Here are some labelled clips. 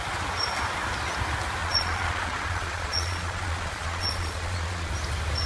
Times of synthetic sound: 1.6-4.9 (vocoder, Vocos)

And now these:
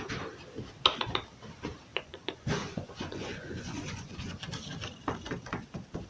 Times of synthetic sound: 1.9-4.4 (vocoder, Vocos)

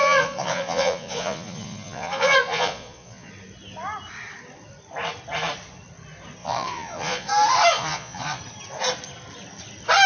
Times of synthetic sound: 0.0-3.3 (vocoder, Vocos); 6.4-7.3; 7.7-8.4

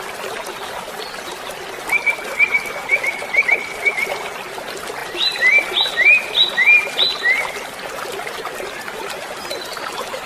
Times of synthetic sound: none